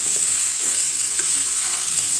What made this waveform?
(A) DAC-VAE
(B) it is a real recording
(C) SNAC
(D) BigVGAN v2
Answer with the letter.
C